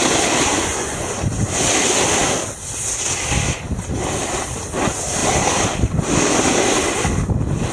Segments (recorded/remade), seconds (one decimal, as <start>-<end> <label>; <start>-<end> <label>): 0.0-0.5 recorded; 0.5-1.2 remade; 1.2-7.7 recorded